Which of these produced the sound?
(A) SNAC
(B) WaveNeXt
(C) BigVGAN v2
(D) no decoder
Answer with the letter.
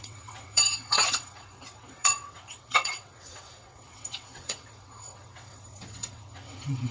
B